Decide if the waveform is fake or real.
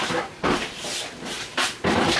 real